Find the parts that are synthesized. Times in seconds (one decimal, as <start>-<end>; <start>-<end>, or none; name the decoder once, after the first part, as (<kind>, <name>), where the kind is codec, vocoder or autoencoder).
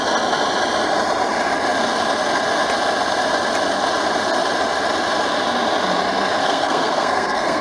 6.4-7.6 (codec, SNAC)